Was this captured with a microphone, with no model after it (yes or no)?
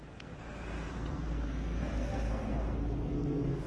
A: no